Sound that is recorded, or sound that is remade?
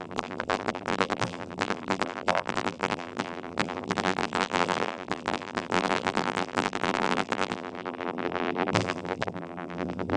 remade